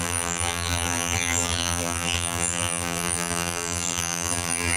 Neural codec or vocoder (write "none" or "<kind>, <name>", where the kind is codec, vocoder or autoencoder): vocoder, BigVGAN v2